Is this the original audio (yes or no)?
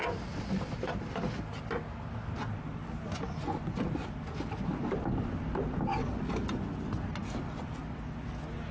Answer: yes